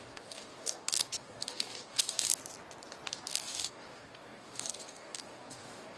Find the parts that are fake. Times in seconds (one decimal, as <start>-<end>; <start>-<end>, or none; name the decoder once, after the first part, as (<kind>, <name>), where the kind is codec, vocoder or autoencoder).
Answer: 0.0-2.3 (codec, DAC); 3.1-6.0

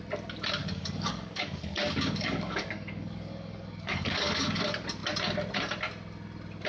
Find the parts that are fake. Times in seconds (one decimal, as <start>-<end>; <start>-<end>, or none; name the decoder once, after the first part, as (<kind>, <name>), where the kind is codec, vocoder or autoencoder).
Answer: 0.6-4.6 (codec, DAC)

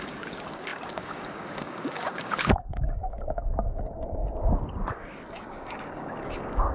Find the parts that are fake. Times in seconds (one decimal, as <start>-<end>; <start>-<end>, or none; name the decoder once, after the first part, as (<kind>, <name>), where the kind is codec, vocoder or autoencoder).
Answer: 0.0-4.2 (codec, DAC); 4.9-6.7

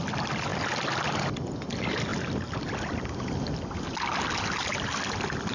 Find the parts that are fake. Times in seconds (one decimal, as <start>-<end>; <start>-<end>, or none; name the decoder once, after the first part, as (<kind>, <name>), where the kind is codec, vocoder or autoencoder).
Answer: none